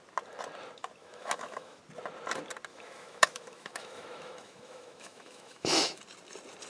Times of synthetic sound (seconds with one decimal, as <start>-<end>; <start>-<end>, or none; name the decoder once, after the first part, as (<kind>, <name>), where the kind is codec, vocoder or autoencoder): 1.0-1.8 (autoencoder, DAC-VAE); 2.7-6.0